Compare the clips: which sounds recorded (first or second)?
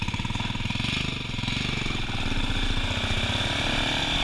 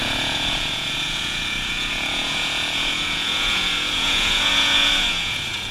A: first